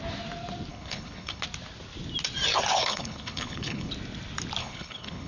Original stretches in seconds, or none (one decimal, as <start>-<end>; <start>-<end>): 0.0-0.7; 1.4-2.8; 3.9-4.6